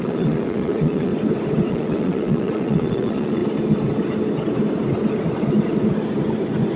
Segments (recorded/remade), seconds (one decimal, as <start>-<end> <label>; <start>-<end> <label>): 0.0-1.1 remade; 1.1-1.7 recorded; 1.7-3.4 remade; 3.4-6.8 recorded